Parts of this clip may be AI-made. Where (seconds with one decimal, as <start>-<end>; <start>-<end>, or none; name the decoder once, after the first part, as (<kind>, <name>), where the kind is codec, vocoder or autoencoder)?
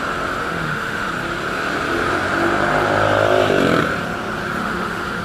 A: 0.4-1.1 (autoencoder, DAC-VAE); 4.6-5.2